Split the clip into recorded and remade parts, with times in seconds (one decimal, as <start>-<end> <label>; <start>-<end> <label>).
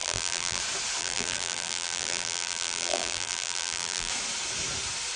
0.0-0.6 remade; 0.6-1.0 recorded; 1.0-4.1 remade; 4.1-5.2 recorded